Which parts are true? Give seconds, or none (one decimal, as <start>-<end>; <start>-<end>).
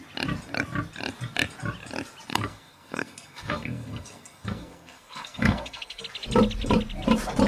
0.0-2.3; 6.0-7.5